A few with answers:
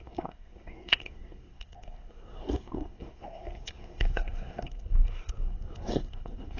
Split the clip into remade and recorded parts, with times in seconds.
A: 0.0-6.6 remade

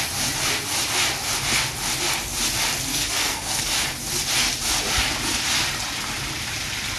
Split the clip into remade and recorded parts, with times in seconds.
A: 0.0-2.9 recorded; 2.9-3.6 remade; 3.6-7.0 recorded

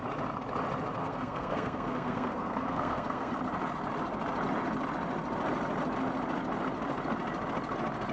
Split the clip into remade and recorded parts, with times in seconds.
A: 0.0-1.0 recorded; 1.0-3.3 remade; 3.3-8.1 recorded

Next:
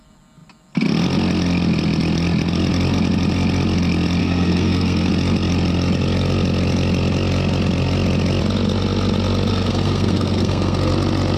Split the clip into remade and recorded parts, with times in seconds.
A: 0.0-4.2 recorded; 4.2-5.1 remade; 5.1-9.5 recorded; 9.5-10.9 remade; 10.9-11.4 recorded

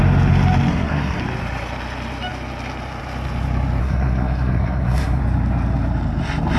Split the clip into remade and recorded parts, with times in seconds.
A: 0.0-0.7 recorded; 0.7-1.2 remade; 1.2-3.8 recorded; 3.8-5.2 remade; 5.2-6.6 recorded

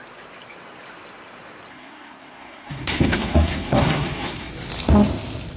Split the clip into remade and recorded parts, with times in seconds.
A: 0.0-1.7 recorded; 1.7-4.5 remade; 4.5-5.6 recorded